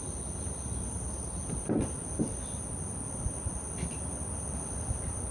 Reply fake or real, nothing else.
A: real